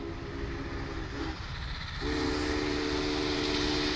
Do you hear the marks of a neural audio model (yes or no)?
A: no